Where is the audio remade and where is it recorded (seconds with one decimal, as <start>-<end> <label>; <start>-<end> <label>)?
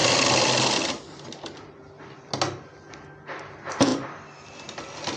0.0-5.2 recorded